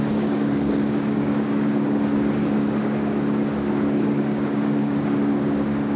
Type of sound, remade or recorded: remade